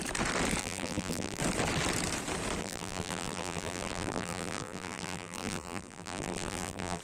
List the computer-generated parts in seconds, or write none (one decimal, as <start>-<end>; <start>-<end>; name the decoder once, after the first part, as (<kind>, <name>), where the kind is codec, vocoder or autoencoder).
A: 0.6-1.4 (vocoder, BigVGAN v2); 2.6-7.0

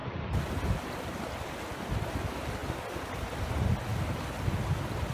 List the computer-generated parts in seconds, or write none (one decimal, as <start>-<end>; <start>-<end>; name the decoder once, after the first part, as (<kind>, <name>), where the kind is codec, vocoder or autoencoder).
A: none